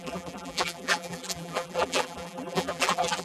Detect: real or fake fake